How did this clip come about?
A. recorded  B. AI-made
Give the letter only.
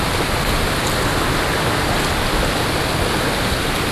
A